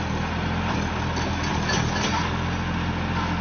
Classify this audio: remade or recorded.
recorded